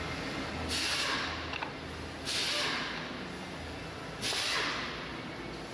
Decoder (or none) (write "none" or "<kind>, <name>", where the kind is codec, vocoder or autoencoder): none